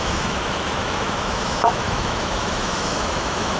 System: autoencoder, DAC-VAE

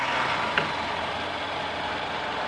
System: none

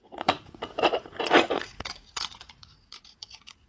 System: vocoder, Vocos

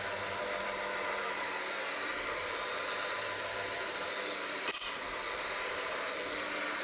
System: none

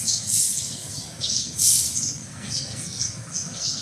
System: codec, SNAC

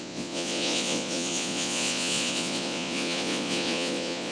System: vocoder, Vocos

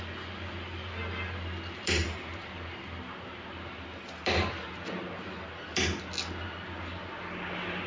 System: none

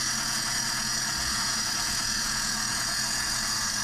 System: vocoder, Vocos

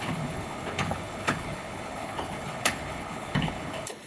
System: codec, HILCodec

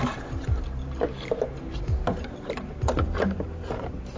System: vocoder, BigVGAN v2